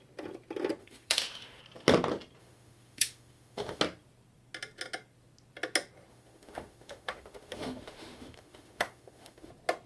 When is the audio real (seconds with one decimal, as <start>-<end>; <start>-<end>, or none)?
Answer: 0.0-0.8; 1.6-2.4; 3.8-6.1; 9.5-9.9